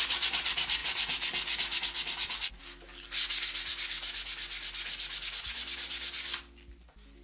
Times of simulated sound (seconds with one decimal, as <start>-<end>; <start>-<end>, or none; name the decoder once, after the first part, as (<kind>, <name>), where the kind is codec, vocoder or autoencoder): none